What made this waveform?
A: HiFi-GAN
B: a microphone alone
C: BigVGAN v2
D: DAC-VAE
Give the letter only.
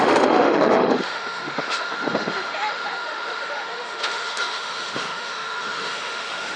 D